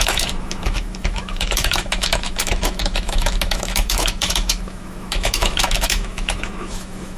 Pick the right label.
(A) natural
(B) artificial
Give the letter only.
B